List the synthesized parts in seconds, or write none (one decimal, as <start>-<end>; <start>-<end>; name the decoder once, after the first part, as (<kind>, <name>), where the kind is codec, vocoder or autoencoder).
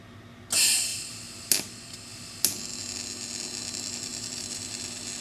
4.1-4.7 (vocoder, BigVGAN v2)